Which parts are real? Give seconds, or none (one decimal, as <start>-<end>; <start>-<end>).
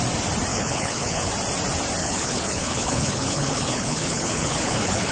0.0-0.5; 1.3-2.0